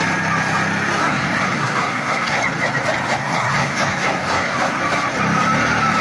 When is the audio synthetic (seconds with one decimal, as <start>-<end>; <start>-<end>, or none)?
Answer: 1.0-2.4; 3.2-4.8

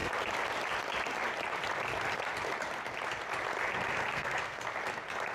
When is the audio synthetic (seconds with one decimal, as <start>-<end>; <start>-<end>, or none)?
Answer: 4.0-4.6

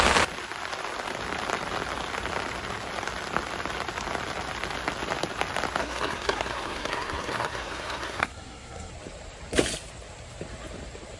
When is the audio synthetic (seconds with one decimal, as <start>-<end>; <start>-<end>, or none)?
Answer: 5.8-8.9

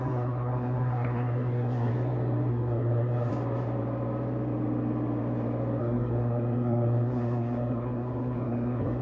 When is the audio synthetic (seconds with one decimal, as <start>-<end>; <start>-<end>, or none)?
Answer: 0.0-1.9; 2.5-3.3; 5.8-9.0

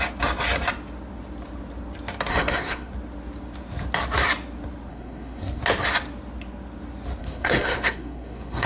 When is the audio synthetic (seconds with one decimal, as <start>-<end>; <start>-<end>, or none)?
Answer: 2.3-2.9; 4.9-5.6; 7.2-8.7

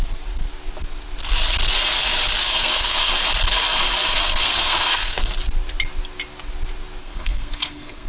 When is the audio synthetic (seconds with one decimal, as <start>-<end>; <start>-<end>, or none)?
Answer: 2.4-3.1; 4.1-5.3; 7.0-8.1